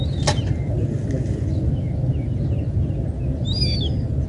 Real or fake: real